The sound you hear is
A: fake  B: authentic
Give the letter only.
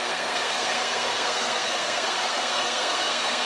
A